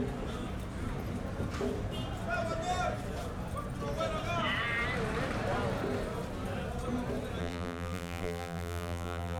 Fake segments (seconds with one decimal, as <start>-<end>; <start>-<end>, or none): 7.4-9.4